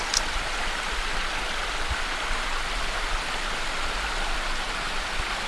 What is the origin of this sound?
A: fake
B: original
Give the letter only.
A